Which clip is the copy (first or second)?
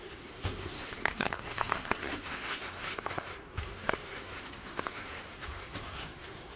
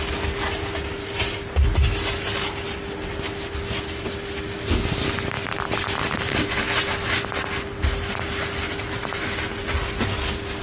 first